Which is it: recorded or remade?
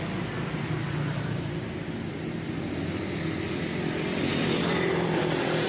recorded